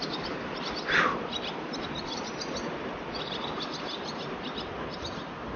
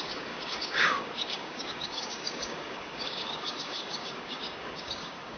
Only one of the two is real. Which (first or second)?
first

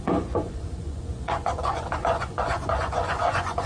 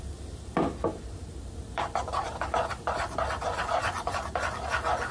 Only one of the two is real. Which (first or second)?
second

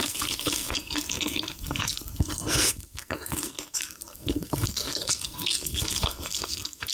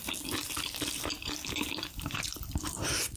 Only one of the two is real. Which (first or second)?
second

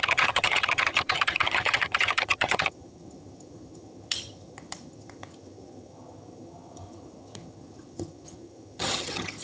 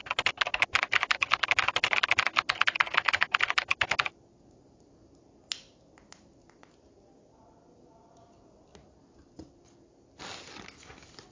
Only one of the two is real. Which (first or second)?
second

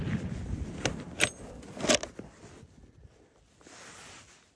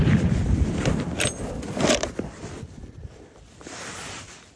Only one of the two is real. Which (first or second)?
first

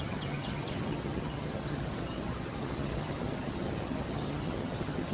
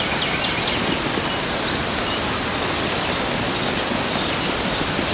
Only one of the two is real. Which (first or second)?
second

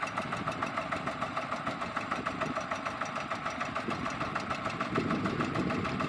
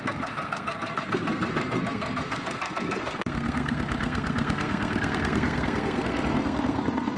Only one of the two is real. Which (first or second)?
first